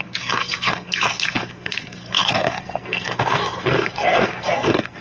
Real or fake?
fake